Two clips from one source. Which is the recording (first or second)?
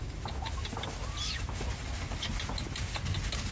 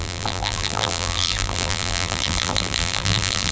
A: first